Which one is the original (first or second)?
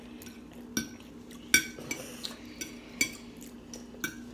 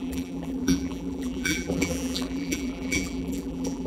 first